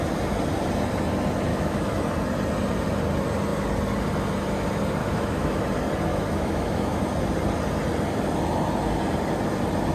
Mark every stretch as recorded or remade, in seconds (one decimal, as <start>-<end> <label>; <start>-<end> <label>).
0.0-1.5 recorded; 1.5-2.0 remade; 2.0-5.0 recorded; 5.0-5.6 remade; 5.6-6.1 recorded; 6.1-7.0 remade; 7.0-9.9 recorded